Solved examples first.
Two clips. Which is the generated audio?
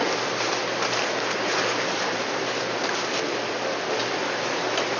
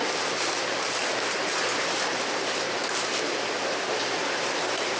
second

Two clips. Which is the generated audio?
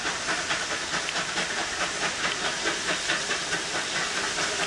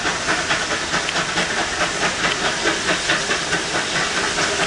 first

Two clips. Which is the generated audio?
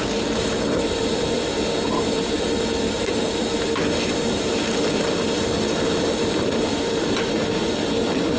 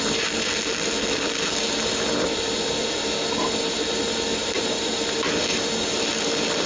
first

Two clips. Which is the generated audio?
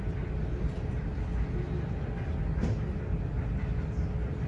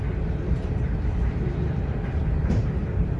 second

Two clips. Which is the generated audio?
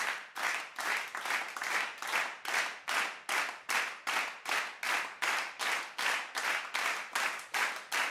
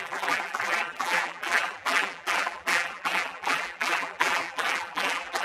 second